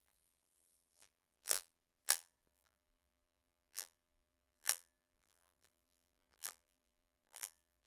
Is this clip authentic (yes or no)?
no